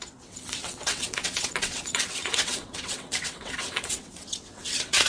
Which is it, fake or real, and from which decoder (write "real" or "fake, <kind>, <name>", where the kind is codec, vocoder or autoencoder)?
fake, vocoder, WaveNeXt